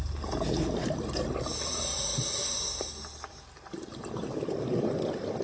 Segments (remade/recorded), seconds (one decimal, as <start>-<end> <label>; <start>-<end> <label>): 0.0-5.4 recorded